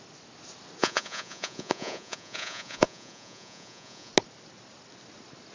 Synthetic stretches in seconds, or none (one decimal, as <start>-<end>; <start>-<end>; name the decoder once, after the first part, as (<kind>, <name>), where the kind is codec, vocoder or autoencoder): 0.8-4.1 (vocoder, Vocos)